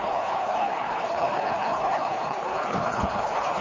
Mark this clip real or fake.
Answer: fake